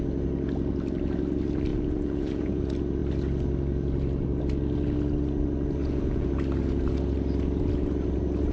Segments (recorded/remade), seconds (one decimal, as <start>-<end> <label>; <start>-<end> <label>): 0.0-1.7 recorded; 1.7-2.6 remade; 2.6-5.8 recorded; 5.8-6.3 remade; 6.3-8.5 recorded